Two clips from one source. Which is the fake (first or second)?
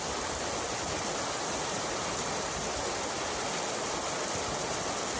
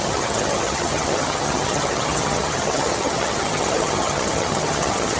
second